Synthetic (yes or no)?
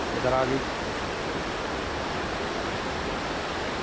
no